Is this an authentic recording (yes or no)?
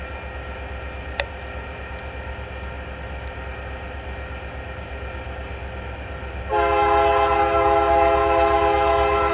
yes